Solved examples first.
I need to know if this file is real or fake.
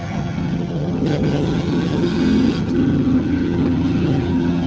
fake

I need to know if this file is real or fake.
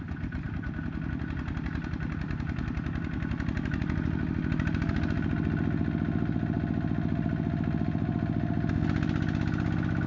real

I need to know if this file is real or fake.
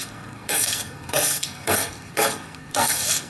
fake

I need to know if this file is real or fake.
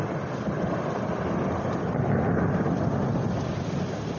real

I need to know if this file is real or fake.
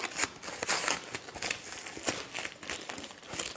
real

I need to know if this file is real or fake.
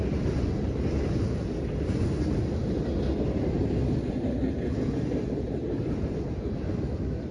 real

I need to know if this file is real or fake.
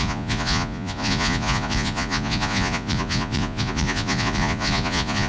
fake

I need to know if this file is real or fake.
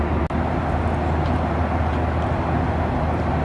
real